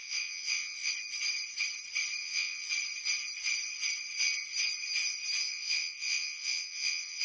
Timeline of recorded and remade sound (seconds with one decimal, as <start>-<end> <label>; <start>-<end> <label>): 0.0-0.9 remade; 0.9-2.2 recorded; 2.2-2.7 remade; 2.7-5.5 recorded; 5.5-7.2 remade